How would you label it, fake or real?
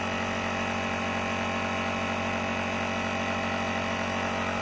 real